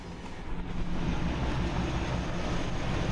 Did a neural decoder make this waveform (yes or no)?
no